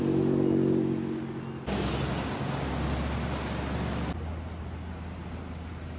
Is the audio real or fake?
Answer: real